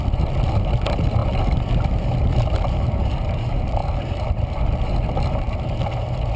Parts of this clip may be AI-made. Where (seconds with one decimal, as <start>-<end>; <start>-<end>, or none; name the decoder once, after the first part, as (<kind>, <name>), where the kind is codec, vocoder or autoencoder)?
none